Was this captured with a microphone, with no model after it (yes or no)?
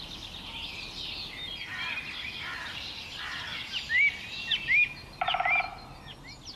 yes